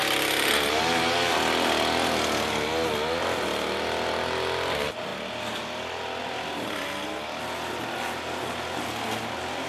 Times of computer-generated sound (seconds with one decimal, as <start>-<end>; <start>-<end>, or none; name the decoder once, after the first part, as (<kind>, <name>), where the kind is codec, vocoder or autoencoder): none